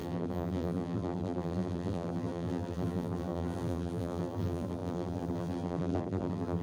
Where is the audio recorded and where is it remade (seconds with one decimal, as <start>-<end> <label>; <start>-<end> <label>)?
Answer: 0.0-6.6 remade

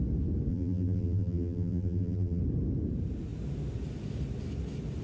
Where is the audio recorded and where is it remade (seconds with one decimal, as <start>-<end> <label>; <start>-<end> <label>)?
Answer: 0.0-0.5 recorded; 0.5-2.4 remade; 2.4-5.0 recorded